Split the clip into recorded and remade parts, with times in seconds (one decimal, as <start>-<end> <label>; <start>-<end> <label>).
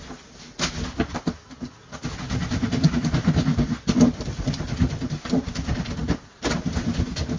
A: 0.0-7.4 recorded